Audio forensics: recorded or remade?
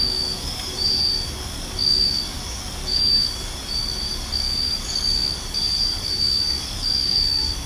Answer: remade